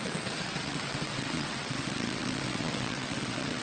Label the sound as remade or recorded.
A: remade